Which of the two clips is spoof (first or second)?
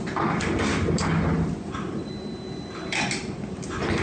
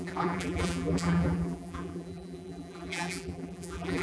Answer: second